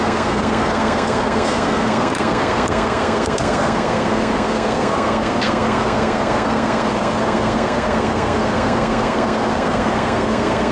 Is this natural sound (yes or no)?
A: no